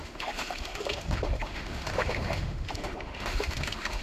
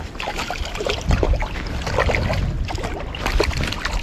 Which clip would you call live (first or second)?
second